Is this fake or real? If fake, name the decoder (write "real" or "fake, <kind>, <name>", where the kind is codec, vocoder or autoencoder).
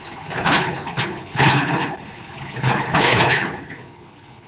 fake, codec, HILCodec